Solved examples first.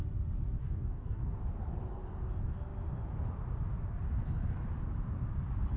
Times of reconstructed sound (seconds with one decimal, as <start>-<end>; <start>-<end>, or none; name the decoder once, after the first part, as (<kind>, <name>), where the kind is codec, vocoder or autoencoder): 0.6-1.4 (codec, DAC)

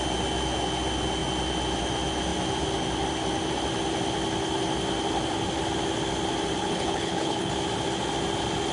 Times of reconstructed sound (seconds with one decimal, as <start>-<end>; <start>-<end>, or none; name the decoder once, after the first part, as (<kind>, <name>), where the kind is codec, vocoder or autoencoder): 6.6-7.5 (codec, HILCodec)

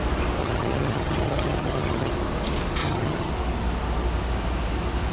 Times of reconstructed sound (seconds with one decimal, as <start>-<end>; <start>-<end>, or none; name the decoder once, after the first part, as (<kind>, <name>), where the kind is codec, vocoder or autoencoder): 0.4-2.1 (vocoder, HiFi-GAN); 2.8-3.3

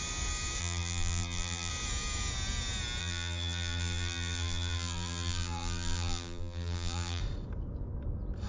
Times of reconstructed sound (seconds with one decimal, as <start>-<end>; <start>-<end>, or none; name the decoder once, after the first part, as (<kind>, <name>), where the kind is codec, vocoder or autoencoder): 0.6-1.7 (vocoder, BigVGAN v2); 3.0-7.2